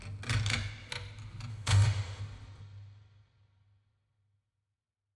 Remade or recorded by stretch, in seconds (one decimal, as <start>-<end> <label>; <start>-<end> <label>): 0.0-1.5 recorded; 1.5-2.2 remade; 2.2-5.2 recorded

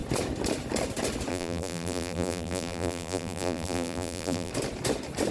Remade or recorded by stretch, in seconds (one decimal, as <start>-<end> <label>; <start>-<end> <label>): 0.0-1.3 recorded; 1.3-4.5 remade; 4.5-5.3 recorded

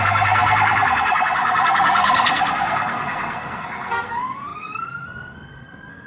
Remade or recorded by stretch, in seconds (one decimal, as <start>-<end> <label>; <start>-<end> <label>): 0.0-6.1 remade

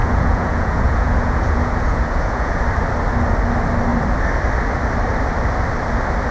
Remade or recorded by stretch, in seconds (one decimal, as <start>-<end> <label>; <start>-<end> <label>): 0.0-2.6 remade; 2.6-6.3 recorded

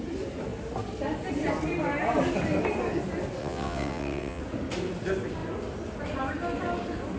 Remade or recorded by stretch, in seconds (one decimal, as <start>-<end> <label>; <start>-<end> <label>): 0.0-3.4 recorded; 3.4-4.4 remade; 4.4-7.2 recorded